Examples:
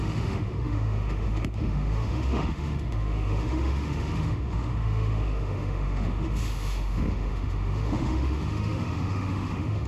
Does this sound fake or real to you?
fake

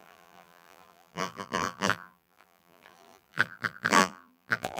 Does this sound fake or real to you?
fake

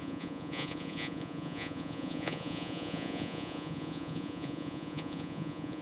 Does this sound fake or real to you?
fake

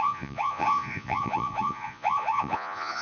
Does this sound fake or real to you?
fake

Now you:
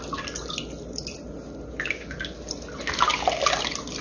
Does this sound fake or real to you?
real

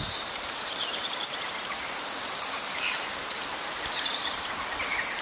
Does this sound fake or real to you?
fake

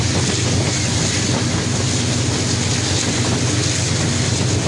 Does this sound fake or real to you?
real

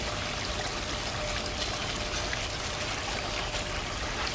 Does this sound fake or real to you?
real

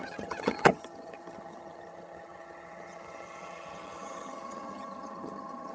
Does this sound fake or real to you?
fake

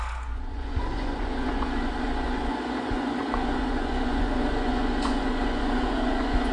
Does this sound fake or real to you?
fake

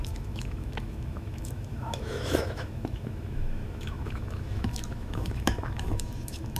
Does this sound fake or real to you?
fake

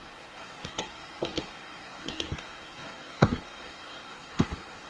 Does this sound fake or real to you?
fake